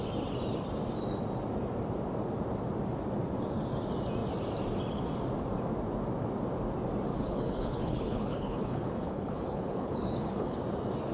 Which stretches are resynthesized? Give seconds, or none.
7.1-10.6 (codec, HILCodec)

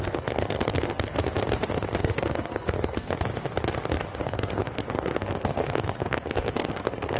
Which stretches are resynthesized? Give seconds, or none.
0.0-1.2 (codec, SNAC); 2.0-3.3; 4.2-7.2

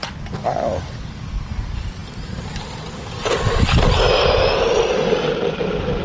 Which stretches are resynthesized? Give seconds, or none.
none

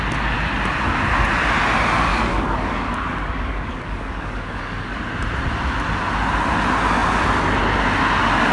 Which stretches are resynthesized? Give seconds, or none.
2.1-5.0 (codec, DAC)